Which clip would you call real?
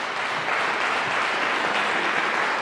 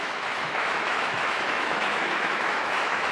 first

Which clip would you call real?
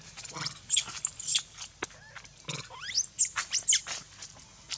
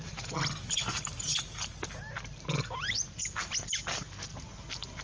first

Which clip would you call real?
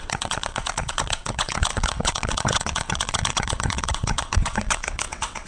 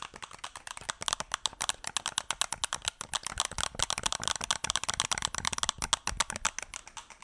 second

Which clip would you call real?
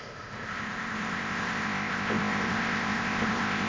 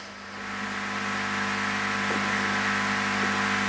second